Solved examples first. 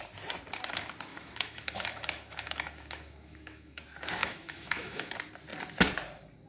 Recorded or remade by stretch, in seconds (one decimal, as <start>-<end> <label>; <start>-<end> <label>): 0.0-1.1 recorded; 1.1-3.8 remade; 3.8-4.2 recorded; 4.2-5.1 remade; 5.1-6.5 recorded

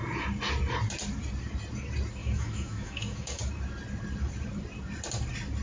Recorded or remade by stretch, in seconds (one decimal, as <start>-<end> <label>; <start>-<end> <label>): 0.0-2.2 recorded; 2.2-3.4 remade; 3.4-5.6 recorded

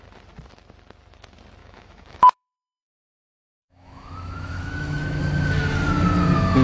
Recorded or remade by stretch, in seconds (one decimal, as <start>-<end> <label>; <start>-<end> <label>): 0.0-1.6 recorded; 1.6-5.2 remade; 5.2-6.6 recorded

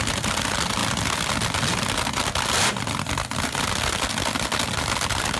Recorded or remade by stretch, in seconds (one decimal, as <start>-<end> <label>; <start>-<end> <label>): 0.0-5.4 recorded